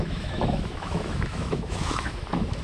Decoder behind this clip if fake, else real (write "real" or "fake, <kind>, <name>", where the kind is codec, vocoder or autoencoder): fake, autoencoder, DAC-VAE